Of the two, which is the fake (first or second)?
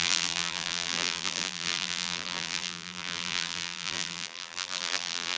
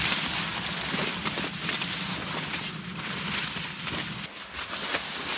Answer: first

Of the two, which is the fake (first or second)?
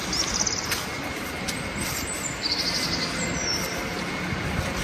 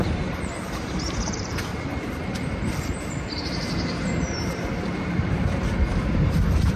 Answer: second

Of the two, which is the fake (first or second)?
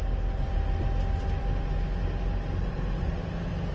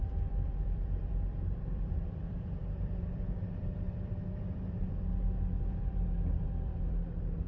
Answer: second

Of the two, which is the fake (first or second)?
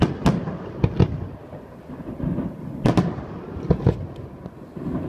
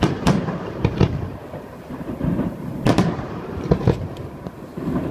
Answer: second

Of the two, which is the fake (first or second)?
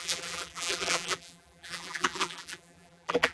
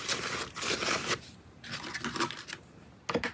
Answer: first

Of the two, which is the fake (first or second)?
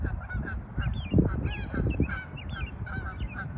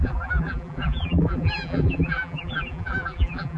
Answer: second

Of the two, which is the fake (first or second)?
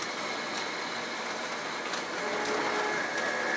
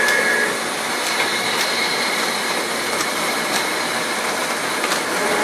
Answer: second